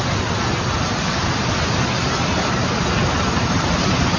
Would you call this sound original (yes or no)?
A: yes